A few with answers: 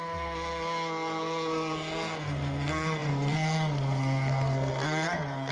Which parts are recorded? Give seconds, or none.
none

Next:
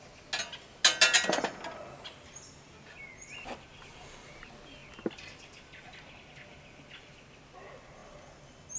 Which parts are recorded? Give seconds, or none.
0.0-8.8

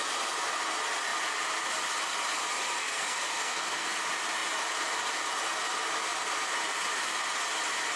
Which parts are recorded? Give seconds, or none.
0.0-2.8; 4.0-8.0

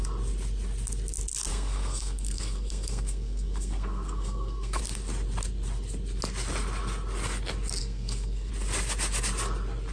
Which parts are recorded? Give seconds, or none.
0.0-1.5; 4.8-7.8; 8.5-9.9

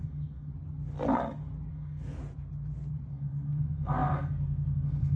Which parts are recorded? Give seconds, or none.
0.5-1.7; 2.2-3.1